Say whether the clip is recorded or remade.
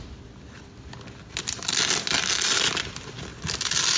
recorded